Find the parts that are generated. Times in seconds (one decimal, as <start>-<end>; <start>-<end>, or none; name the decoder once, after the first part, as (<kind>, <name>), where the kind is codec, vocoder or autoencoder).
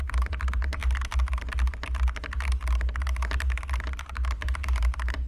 0.0-0.8 (vocoder, BigVGAN v2); 4.0-5.3